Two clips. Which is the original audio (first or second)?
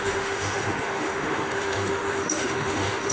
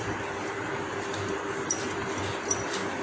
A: second